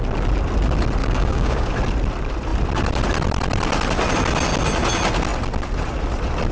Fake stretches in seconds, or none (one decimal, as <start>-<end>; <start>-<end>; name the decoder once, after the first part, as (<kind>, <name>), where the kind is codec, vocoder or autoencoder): 1.0-1.7 (codec, DAC)